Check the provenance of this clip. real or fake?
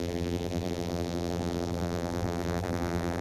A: fake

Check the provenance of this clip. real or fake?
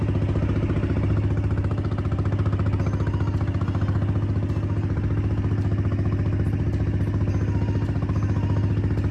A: real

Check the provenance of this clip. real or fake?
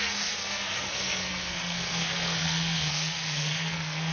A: fake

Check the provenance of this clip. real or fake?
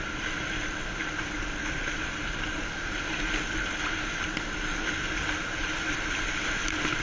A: real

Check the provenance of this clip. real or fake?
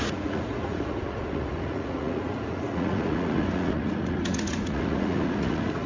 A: fake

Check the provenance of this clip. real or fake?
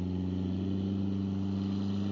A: real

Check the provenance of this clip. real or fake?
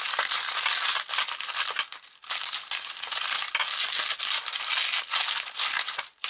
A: real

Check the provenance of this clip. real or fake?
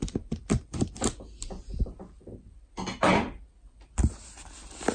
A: real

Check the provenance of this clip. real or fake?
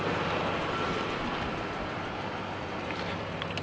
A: real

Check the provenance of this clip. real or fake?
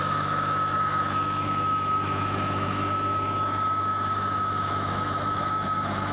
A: fake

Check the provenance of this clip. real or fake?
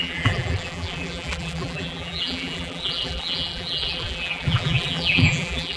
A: fake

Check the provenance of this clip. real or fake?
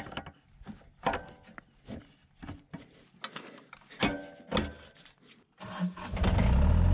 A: real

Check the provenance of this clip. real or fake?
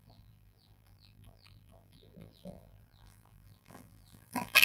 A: fake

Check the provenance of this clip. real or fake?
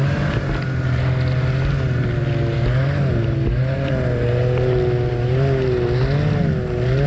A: real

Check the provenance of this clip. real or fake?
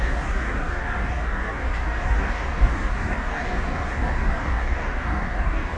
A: fake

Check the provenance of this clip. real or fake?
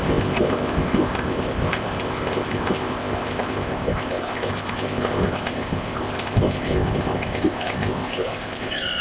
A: fake